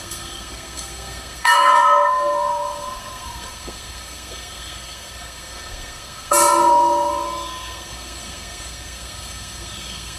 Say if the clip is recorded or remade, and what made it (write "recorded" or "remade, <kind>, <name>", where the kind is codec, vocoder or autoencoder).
remade, codec, SNAC